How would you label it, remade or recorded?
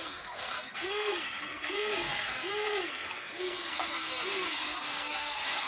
remade